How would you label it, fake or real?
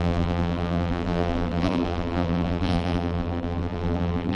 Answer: fake